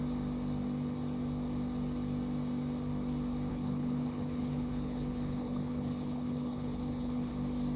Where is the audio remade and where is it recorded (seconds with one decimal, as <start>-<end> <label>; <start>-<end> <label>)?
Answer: 0.0-3.5 recorded; 3.5-7.3 remade; 7.3-7.8 recorded